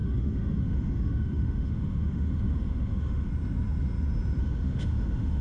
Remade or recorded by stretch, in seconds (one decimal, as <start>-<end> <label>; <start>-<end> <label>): 0.0-3.3 remade; 3.3-4.4 recorded; 4.4-5.4 remade